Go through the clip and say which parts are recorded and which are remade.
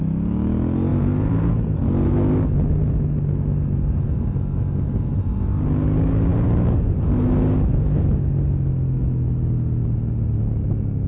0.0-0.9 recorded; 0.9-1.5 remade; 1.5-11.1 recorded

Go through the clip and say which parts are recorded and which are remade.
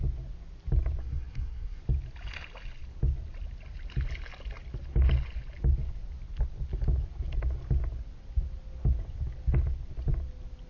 0.0-1.0 recorded; 1.0-1.8 remade; 1.8-10.7 recorded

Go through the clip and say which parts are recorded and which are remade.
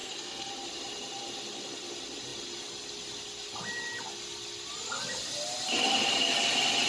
0.0-0.5 remade; 0.5-6.9 recorded